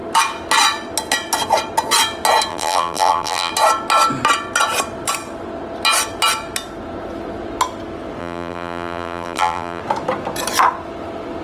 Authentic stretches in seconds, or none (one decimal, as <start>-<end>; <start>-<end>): 0.0-2.5; 3.5-8.2; 9.8-11.4